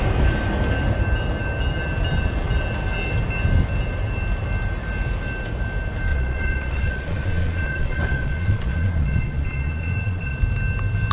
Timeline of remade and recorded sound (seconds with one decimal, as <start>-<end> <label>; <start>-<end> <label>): 0.0-6.1 recorded; 6.1-10.4 remade; 10.4-11.1 recorded